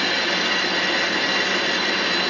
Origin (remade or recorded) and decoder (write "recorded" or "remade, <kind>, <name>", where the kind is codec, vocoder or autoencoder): recorded